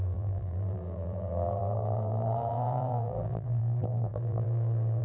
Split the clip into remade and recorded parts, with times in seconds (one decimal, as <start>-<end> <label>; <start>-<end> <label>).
0.0-5.0 remade